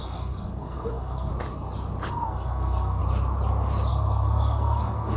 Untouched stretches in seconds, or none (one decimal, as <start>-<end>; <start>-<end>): 1.3-2.1; 3.0-3.9